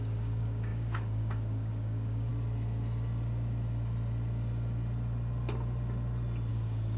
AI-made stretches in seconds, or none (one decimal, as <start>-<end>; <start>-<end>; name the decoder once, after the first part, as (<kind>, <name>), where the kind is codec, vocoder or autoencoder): 0.0-2.3 (codec, DAC); 6.5-7.0